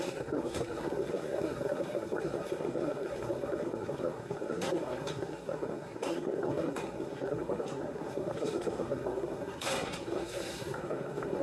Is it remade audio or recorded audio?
remade